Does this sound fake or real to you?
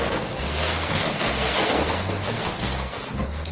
fake